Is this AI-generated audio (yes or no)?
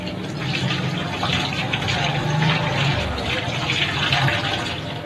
no